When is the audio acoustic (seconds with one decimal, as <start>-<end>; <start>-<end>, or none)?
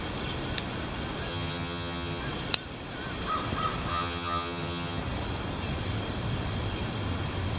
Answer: 0.0-1.3; 2.2-3.9; 5.0-7.6